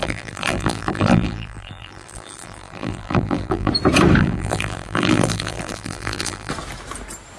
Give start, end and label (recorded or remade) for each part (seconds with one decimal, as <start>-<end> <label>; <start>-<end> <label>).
0.0-3.7 remade; 3.7-4.2 recorded; 4.2-6.5 remade; 6.5-7.4 recorded